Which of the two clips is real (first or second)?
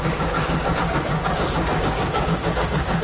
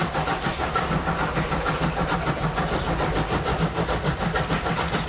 second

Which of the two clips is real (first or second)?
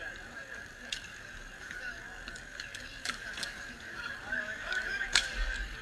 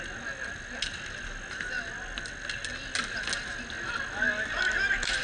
second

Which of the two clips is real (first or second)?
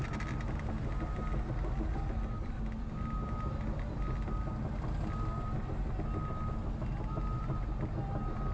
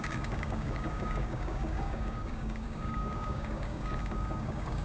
first